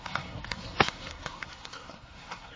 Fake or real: fake